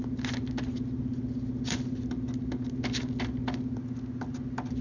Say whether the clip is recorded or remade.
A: recorded